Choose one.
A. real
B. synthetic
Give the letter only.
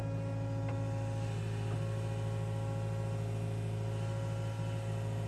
A